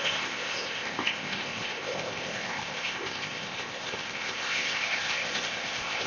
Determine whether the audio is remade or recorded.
remade